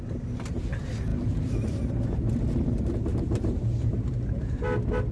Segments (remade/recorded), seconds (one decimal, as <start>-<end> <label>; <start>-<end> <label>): 0.0-3.1 recorded; 3.1-4.6 remade; 4.6-5.1 recorded

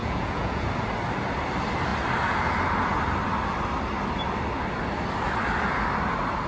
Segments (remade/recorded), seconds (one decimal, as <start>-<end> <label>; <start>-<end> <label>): 0.0-0.7 remade; 0.7-6.5 recorded

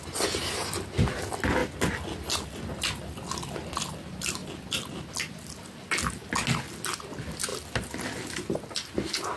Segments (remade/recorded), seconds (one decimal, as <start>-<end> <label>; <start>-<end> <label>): 0.0-9.4 recorded

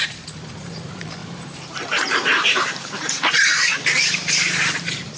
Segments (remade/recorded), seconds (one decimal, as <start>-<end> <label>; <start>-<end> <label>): 0.0-5.2 remade

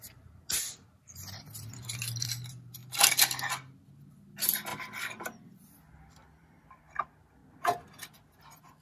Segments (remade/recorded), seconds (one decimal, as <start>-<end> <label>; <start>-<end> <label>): 0.0-2.8 remade; 2.8-4.1 recorded; 4.1-4.7 remade; 4.7-6.0 recorded; 6.0-7.4 remade; 7.4-8.4 recorded; 8.4-8.8 remade

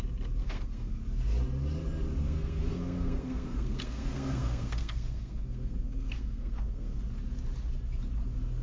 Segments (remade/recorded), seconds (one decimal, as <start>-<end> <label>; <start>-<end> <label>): 0.0-0.4 recorded; 0.4-1.0 remade; 1.0-2.2 recorded; 2.2-7.0 remade; 7.0-8.6 recorded

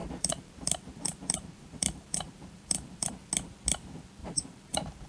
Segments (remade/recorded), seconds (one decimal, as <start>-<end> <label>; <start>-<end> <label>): 0.0-3.1 remade; 3.1-4.2 recorded; 4.2-5.1 remade

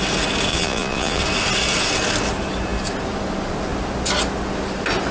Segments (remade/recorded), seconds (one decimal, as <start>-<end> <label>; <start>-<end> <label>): 0.0-0.5 recorded; 0.5-1.2 remade; 1.2-5.1 recorded